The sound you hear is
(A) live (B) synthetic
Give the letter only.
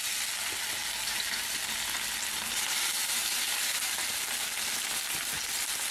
A